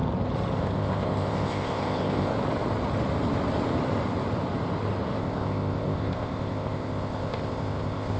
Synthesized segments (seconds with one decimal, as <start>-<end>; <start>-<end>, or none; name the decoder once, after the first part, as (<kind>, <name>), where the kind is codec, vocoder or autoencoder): 0.6-2.3 (codec, ZipCodec); 5.2-8.2